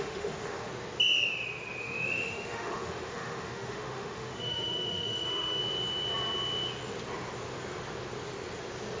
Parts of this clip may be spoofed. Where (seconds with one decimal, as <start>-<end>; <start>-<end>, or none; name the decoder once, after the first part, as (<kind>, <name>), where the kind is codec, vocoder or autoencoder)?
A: 0.0-0.7 (autoencoder, DAC-VAE); 1.8-5.6